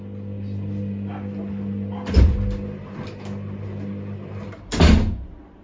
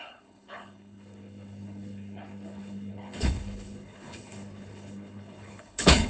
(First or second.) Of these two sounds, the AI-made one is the second